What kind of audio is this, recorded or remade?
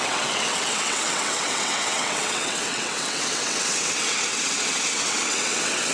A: remade